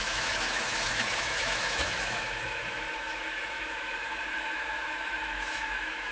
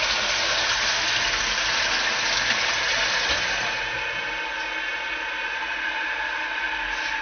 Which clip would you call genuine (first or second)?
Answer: second